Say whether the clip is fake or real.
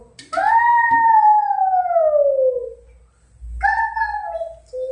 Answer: real